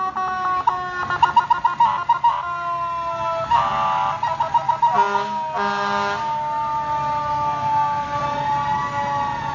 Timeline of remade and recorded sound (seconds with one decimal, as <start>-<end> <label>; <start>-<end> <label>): 0.0-7.2 recorded; 7.2-8.2 remade; 8.2-9.5 recorded